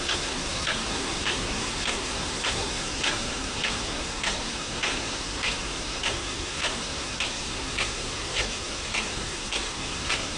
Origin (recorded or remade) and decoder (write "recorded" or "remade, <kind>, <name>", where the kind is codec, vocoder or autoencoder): remade, codec, SNAC